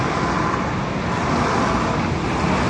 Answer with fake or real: real